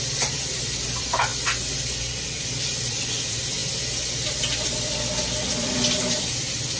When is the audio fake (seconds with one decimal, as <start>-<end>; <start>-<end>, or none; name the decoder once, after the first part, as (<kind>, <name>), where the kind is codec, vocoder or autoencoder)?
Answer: 0.0-1.3 (vocoder, BigVGAN v2); 2.0-3.6; 4.4-6.8

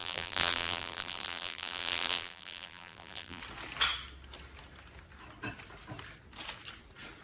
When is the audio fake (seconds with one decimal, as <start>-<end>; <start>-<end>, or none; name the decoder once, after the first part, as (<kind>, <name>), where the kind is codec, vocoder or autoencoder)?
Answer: 0.0-3.4 (vocoder, BigVGAN v2)

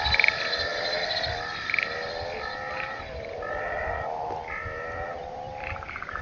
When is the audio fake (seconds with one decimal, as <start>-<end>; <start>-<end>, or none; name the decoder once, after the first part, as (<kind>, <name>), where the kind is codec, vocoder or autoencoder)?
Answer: 0.0-6.2 (vocoder, BigVGAN v2)

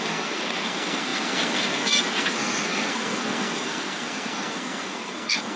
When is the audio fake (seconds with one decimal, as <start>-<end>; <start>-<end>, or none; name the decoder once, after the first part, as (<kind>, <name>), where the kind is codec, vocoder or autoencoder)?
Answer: 0.0-5.6 (codec, SNAC)

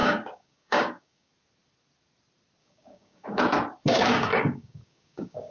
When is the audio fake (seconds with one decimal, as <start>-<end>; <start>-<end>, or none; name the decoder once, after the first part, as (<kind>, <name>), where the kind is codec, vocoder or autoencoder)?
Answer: 0.0-1.3 (codec, DAC); 2.6-3.4; 3.8-5.5

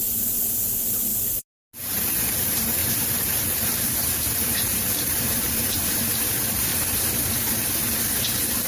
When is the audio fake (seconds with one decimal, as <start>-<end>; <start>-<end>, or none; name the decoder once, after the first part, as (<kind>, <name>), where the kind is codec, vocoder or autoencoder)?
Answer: 0.0-1.1 (vocoder, BigVGAN v2); 2.2-6.7